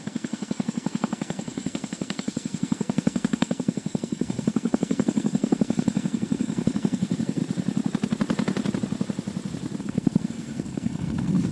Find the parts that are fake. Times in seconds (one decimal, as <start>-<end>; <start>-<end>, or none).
0.0-7.4; 9.8-11.5